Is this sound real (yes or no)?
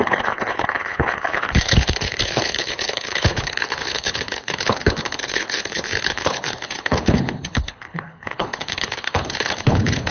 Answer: no